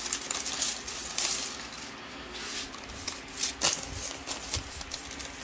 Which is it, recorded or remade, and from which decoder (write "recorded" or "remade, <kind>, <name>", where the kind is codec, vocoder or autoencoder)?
recorded